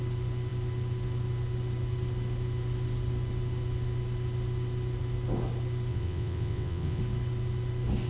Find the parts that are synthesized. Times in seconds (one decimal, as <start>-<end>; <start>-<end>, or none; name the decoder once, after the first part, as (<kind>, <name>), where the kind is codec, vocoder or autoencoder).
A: 5.9-7.0 (vocoder, WaveNeXt)